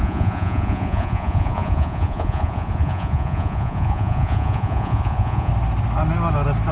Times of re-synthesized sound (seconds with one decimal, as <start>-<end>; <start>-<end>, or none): 0.0-5.5